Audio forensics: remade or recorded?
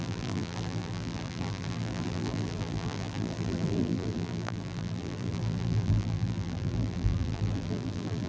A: remade